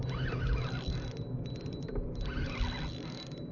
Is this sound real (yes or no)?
yes